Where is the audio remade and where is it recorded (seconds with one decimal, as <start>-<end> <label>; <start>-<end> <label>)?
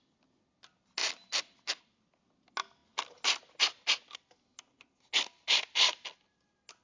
0.0-6.8 recorded